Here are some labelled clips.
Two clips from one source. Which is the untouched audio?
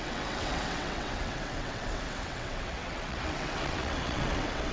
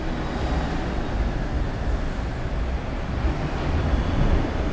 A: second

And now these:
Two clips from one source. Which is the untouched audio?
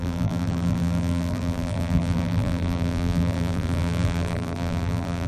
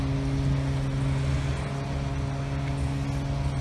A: second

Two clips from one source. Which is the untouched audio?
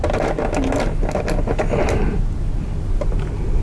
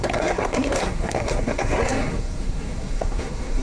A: first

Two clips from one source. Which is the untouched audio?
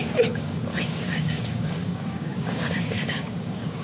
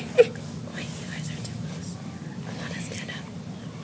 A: second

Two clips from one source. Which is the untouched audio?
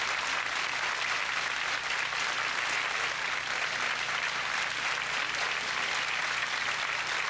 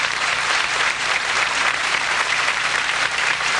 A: first